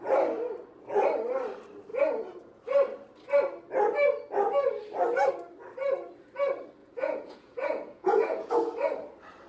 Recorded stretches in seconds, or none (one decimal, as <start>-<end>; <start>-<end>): 0.0-1.9; 2.6-6.8; 8.5-9.5